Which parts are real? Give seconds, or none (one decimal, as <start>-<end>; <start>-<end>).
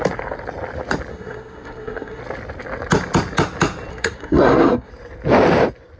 0.0-1.1; 2.2-3.9; 4.9-6.0